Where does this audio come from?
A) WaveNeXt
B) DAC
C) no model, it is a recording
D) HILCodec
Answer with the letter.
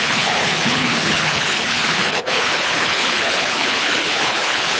D